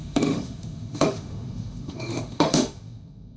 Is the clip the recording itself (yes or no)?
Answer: no